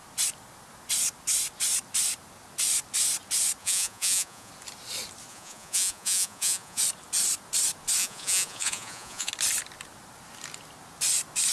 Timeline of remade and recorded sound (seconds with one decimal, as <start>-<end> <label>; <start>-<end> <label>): 0.0-3.6 recorded; 3.6-4.5 remade; 4.5-5.3 recorded; 5.3-6.8 remade; 6.8-8.0 recorded; 8.0-9.3 remade; 9.3-11.5 recorded